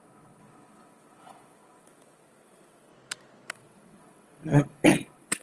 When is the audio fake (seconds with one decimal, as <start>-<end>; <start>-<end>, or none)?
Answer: 0.0-2.9; 3.5-5.4